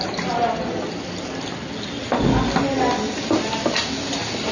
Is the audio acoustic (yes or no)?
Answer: yes